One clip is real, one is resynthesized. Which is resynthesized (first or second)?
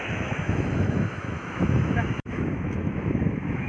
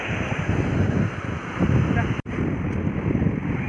first